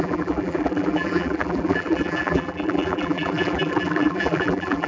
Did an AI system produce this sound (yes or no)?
yes